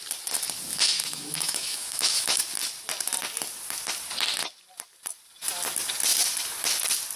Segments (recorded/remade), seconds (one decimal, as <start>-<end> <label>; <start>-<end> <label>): 0.0-0.7 recorded; 0.7-2.4 remade; 2.4-7.2 recorded